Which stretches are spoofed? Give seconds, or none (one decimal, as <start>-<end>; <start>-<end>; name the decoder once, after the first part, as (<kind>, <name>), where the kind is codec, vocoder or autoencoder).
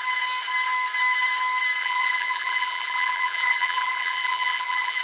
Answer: 1.8-5.0 (vocoder, BigVGAN v2)